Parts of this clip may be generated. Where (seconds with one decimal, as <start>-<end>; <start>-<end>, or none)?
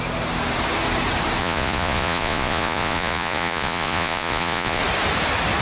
1.4-4.8